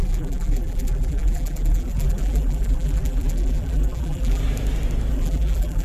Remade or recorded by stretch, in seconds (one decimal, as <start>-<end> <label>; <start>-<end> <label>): 0.0-4.4 remade; 4.4-5.1 recorded; 5.1-5.8 remade